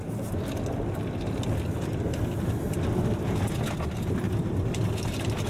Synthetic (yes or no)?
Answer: no